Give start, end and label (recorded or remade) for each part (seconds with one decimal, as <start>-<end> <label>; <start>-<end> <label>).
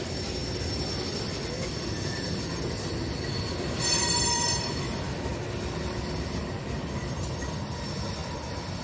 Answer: 0.0-0.4 remade; 0.4-3.5 recorded; 3.5-5.3 remade; 5.3-6.4 recorded; 6.4-8.8 remade